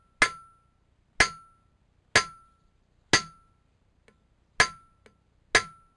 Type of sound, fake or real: real